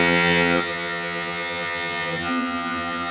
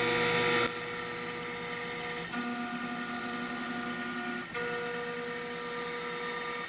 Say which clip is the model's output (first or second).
first